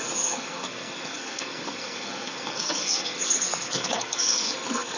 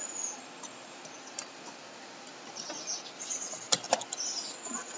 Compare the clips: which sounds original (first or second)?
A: second